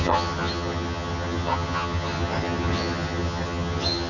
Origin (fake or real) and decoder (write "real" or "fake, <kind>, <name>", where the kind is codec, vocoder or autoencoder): fake, vocoder, HiFi-GAN